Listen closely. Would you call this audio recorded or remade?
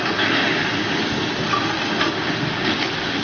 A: remade